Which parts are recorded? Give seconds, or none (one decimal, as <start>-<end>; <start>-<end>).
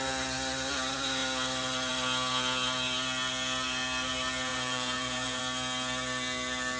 0.0-4.5; 5.4-6.8